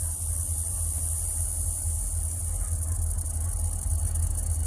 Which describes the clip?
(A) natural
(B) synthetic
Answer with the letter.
A